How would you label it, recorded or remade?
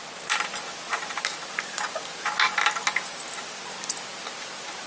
recorded